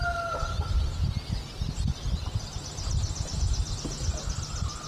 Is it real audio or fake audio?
real